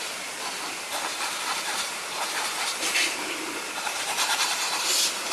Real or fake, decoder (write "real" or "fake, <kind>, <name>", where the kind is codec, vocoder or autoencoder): fake, vocoder, BigVGAN v2